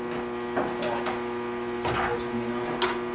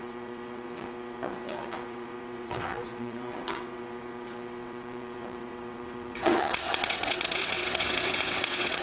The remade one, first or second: second